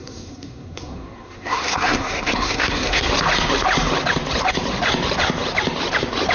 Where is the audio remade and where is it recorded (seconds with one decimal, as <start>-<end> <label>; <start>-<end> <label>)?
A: 0.0-3.1 remade; 3.1-6.3 recorded